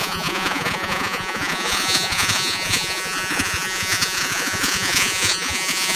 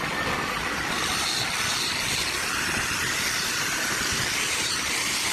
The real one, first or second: second